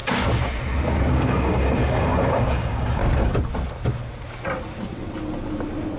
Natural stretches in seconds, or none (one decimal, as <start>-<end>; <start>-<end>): 0.0-1.1; 3.0-6.0

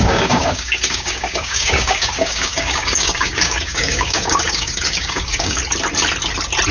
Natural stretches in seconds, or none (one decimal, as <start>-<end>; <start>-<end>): 5.6-6.7